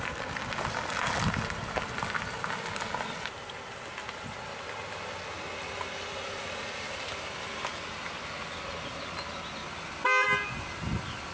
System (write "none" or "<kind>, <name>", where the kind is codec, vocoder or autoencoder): none